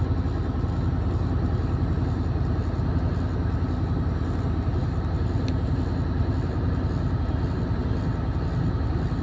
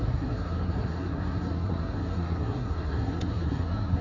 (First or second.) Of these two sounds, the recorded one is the first